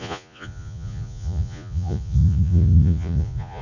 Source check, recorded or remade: remade